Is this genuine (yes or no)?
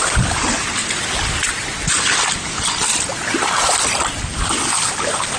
yes